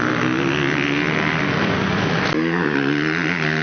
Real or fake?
real